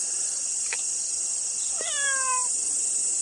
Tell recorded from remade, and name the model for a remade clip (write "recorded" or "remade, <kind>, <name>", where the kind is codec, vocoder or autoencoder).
recorded